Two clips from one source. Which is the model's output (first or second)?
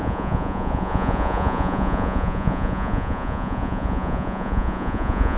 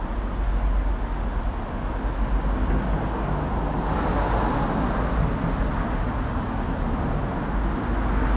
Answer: first